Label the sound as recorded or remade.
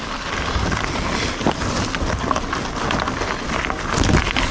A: recorded